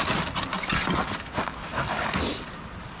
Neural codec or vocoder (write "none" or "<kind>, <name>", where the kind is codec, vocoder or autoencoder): none